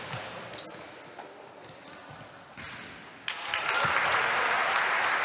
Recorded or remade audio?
recorded